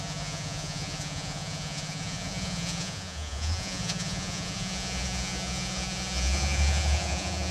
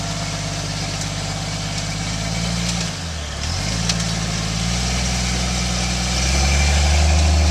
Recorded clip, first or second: second